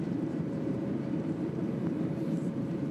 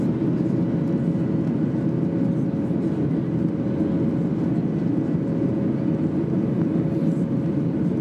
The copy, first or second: first